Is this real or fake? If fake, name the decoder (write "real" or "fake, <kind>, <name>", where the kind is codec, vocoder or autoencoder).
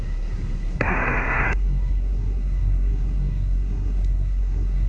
fake, codec, SNAC